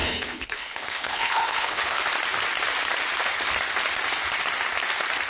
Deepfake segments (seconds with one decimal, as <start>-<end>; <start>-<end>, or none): 0.0-2.0